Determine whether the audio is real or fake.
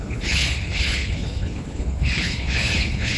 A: fake